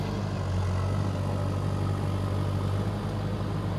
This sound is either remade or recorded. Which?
recorded